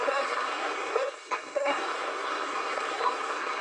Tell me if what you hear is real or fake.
fake